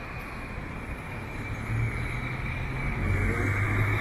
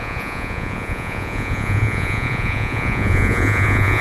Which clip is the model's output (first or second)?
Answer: second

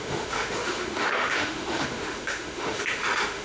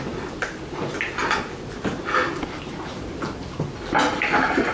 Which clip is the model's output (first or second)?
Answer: first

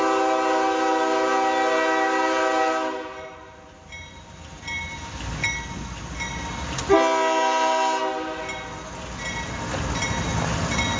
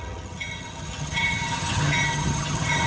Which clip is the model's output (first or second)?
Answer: second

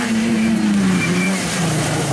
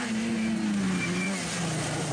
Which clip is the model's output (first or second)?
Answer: first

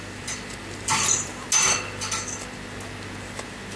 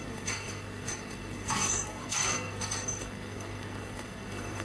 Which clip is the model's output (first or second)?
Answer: second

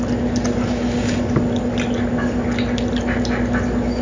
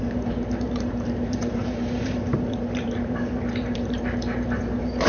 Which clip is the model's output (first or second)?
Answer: second